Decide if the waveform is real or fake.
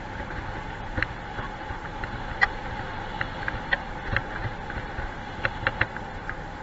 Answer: real